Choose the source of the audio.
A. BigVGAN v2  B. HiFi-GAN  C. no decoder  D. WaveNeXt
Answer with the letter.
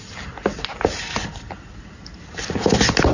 C